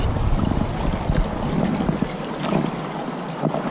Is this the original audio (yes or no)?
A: yes